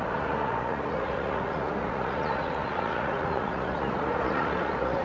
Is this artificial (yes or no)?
yes